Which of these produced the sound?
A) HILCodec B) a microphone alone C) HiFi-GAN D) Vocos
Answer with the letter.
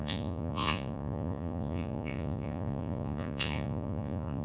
D